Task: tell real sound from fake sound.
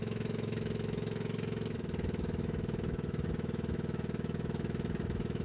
fake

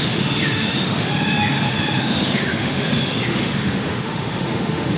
fake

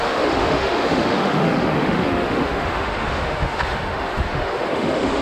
fake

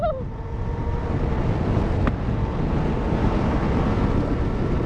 real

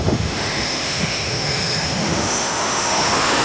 fake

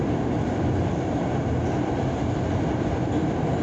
real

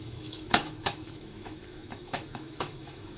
fake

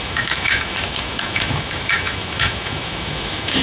fake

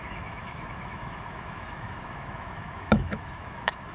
fake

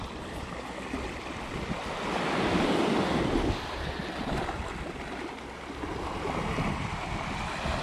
real